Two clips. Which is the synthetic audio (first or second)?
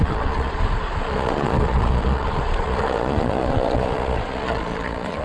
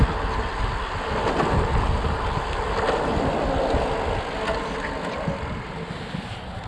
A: first